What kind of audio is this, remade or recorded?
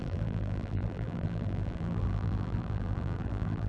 remade